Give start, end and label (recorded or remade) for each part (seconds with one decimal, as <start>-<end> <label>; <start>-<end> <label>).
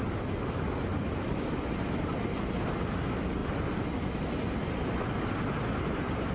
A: 0.0-0.9 recorded; 0.9-1.6 remade; 1.6-6.3 recorded